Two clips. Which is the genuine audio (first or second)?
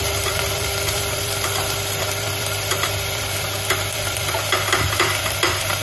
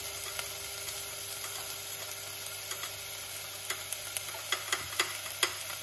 second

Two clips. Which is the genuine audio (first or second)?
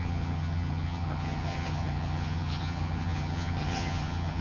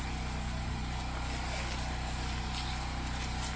second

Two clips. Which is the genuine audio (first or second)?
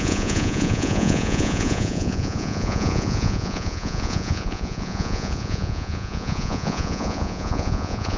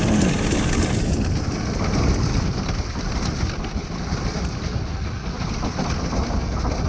second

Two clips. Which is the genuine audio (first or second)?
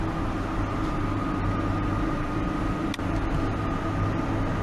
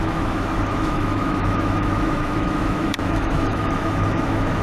first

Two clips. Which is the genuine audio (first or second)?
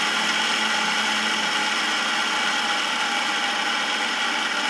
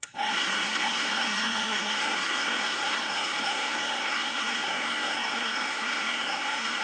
first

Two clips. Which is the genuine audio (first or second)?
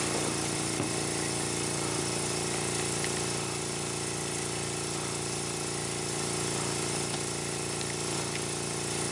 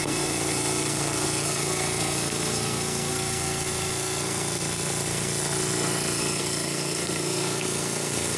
first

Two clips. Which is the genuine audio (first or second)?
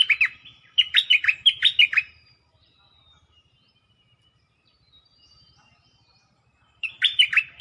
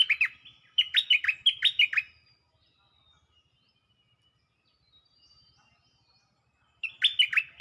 second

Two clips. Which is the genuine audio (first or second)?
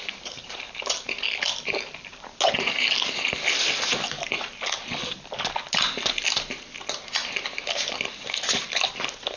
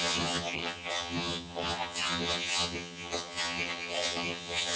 first